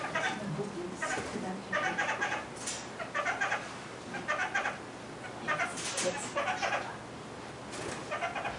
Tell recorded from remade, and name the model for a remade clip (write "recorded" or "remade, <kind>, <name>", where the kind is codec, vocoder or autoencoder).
recorded